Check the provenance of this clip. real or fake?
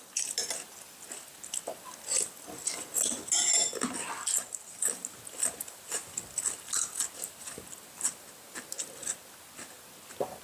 real